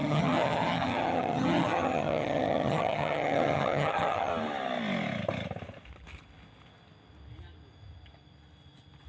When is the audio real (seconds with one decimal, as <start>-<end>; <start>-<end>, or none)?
4.3-9.1